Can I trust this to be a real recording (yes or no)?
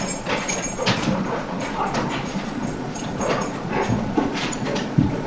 no